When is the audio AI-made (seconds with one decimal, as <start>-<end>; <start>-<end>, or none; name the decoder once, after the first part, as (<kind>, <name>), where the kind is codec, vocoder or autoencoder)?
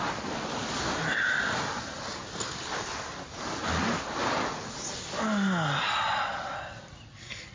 none